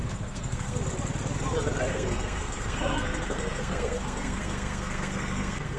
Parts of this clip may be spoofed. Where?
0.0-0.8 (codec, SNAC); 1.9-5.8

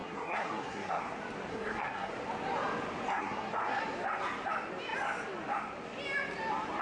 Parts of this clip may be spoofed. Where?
0.0-1.0 (codec, SNAC); 1.5-2.1; 3.1-3.8

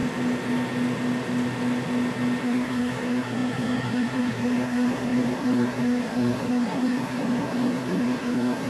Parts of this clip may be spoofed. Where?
2.4-8.7 (codec, SNAC)